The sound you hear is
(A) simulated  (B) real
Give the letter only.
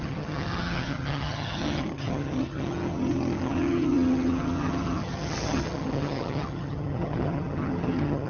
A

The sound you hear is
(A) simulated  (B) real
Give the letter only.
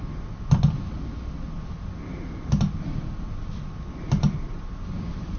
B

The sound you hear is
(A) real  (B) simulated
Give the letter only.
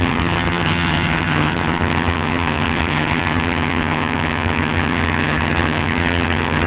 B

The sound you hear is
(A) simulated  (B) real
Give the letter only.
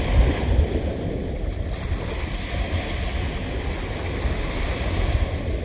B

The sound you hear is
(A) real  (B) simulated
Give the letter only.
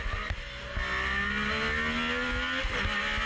A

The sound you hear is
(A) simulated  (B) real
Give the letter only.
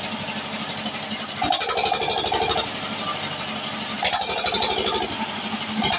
B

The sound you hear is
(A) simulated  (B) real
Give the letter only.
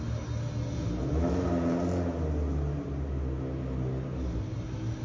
B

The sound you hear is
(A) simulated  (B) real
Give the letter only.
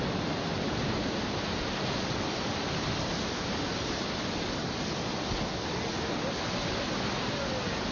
B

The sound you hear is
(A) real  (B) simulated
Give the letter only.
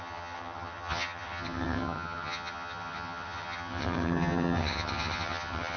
B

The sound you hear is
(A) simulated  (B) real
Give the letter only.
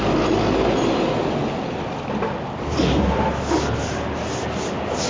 B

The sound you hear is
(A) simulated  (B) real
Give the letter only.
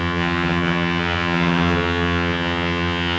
A